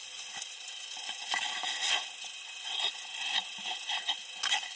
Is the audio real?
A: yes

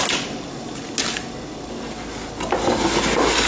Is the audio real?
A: yes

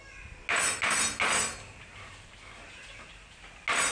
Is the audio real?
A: yes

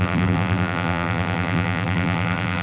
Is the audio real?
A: no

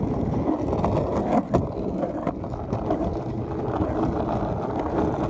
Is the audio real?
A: yes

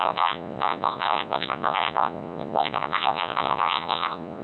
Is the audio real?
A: no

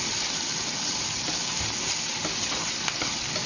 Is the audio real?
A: yes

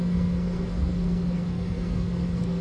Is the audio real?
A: no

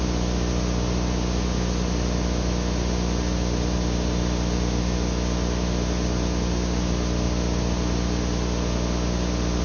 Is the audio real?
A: yes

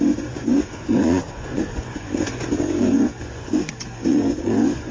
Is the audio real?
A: no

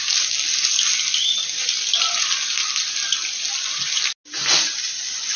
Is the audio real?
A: yes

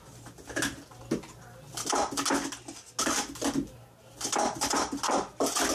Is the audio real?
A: yes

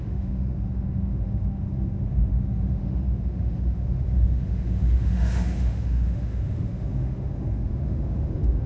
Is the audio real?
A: no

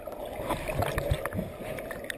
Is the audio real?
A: yes